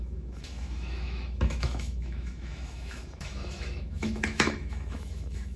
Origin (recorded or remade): remade